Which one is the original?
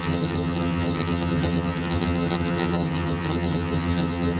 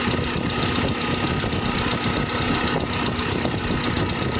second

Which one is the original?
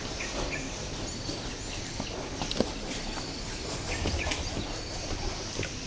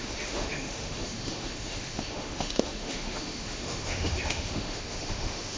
first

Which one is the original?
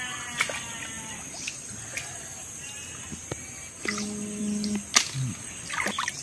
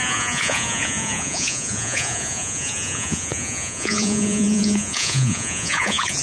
first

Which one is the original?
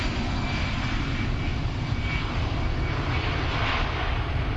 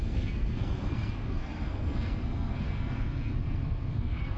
first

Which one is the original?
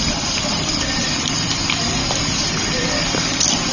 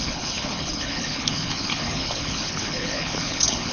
first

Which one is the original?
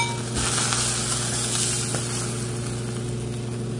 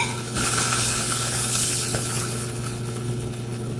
first